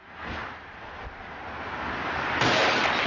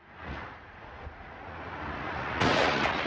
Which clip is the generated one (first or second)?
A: second